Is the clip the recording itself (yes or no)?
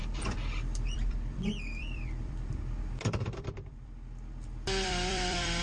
no